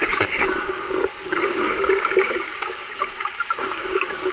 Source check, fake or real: fake